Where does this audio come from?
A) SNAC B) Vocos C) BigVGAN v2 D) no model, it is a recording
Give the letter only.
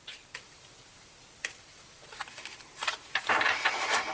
C